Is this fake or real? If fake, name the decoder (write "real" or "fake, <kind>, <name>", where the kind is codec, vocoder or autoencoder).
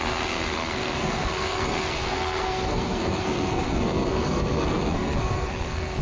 fake, codec, SNAC